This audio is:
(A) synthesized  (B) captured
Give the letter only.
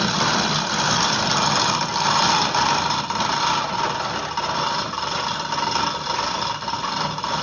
B